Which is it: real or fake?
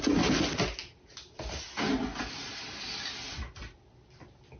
real